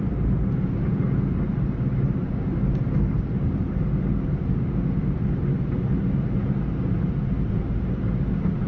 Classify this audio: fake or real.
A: real